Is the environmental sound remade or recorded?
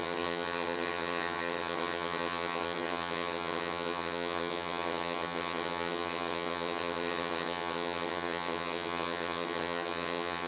remade